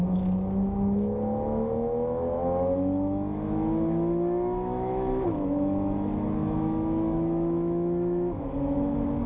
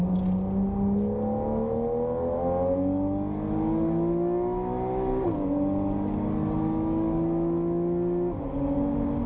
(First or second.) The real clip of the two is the second